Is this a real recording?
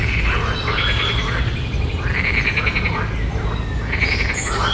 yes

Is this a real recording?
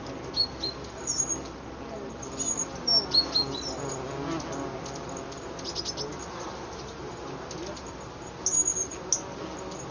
yes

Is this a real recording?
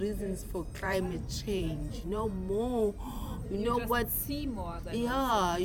no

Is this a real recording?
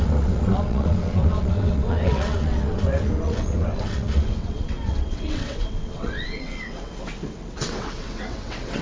no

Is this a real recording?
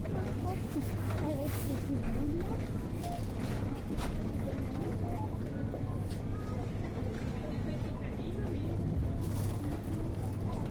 yes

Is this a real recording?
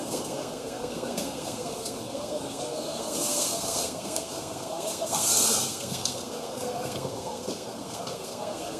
no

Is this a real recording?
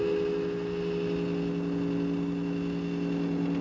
yes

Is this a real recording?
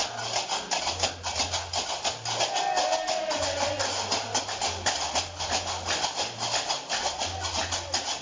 yes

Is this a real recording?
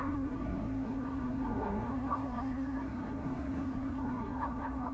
no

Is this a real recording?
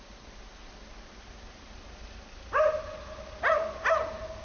yes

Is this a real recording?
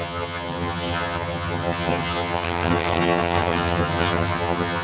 no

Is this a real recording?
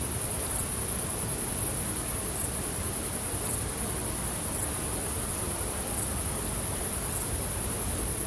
no